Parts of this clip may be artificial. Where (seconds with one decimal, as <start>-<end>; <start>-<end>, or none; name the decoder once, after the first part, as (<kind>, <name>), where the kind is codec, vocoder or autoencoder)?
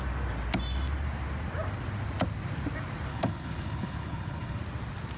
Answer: 3.1-4.6 (codec, HILCodec)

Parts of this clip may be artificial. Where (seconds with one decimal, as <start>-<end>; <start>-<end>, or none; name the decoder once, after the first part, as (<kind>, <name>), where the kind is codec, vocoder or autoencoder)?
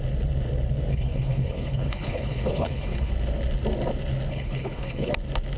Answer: 0.9-3.1 (codec, HILCodec); 4.3-5.1